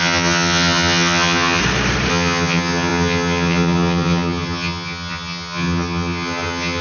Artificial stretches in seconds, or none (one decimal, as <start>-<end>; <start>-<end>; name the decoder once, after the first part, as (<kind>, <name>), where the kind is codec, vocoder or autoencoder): 0.0-1.6 (vocoder, HiFi-GAN); 2.1-6.8